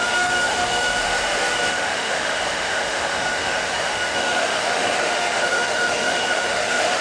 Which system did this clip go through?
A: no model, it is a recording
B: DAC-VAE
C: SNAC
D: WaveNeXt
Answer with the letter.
B